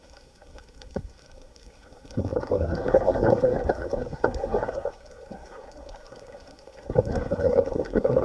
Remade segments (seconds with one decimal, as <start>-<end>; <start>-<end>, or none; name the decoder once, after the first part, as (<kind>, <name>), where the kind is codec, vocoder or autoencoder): 0.0-8.2 (codec, SNAC)